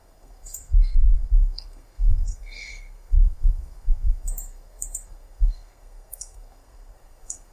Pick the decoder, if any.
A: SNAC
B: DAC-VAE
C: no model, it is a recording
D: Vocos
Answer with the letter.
A